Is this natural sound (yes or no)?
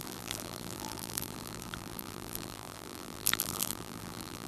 no